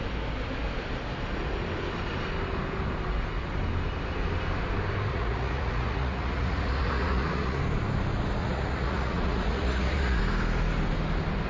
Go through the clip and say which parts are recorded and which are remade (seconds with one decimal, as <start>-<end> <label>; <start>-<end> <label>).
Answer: 0.0-5.1 recorded; 5.1-7.6 remade; 7.6-8.4 recorded; 8.4-10.2 remade; 10.2-11.5 recorded